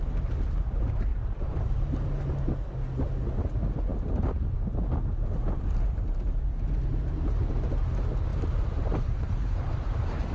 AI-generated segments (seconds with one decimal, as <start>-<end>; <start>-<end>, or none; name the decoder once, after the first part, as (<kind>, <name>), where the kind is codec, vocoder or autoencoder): 1.1-2.3 (vocoder, BigVGAN v2); 8.3-10.3